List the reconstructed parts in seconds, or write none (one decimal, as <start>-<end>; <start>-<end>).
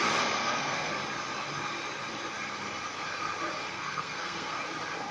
0.4-0.9; 3.7-4.6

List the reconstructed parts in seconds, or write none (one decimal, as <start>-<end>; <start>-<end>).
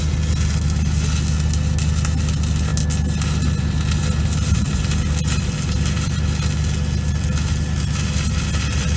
none